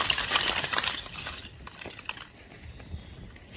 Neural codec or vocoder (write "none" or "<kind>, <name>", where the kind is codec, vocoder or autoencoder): none